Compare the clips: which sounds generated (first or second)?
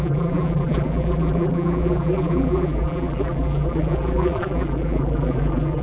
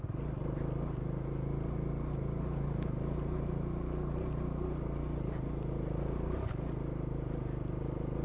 first